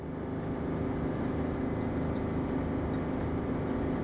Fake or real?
real